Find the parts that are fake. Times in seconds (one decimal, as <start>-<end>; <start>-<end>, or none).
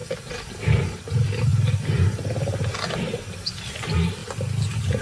none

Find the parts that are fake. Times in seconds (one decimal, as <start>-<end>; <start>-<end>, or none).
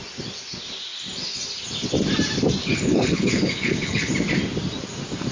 2.6-4.1